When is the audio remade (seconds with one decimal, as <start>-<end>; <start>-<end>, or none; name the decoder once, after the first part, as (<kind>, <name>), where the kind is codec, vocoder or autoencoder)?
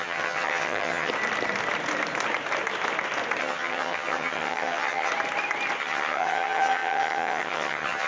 0.0-1.1 (vocoder, HiFi-GAN); 3.4-5.1; 5.8-8.1